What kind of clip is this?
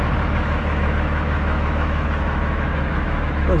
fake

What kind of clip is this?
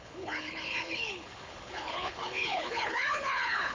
fake